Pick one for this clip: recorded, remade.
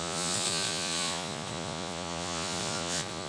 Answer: remade